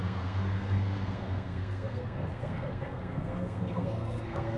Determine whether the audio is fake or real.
fake